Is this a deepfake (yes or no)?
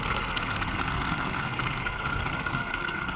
yes